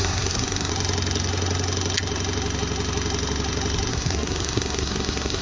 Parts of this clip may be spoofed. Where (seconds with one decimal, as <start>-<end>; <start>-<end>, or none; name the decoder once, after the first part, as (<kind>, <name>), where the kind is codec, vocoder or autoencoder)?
0.0-0.7 (codec, SNAC); 3.9-5.4